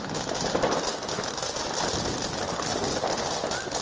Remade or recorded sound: recorded